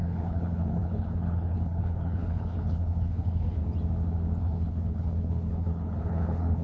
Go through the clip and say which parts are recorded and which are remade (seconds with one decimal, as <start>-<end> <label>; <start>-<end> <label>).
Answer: 0.0-3.6 remade; 3.6-4.4 recorded; 4.4-6.6 remade